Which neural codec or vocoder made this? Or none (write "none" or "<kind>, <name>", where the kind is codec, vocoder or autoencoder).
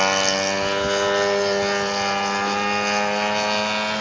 none